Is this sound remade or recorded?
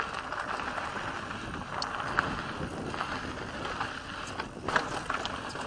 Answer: recorded